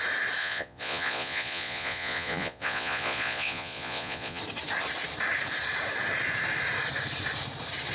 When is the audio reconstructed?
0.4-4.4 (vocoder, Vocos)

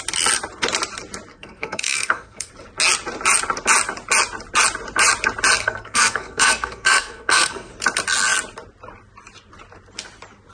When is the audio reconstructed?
1.3-2.5 (codec, SNAC); 5.6-7.7